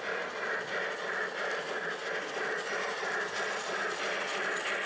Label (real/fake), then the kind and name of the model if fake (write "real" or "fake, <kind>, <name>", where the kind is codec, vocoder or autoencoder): real